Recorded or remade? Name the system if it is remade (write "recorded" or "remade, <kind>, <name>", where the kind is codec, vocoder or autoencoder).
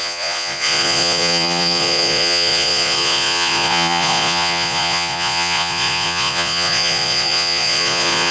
remade, vocoder, Vocos